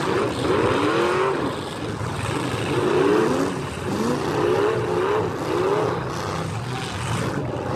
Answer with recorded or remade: recorded